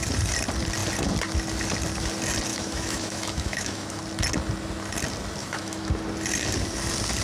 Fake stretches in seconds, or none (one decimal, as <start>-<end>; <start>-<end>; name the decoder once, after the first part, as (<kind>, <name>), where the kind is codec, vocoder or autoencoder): 2.5-4.0 (autoencoder, DAC-VAE); 5.4-5.9